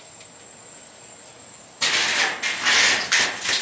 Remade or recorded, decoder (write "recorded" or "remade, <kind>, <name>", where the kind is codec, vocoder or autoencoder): recorded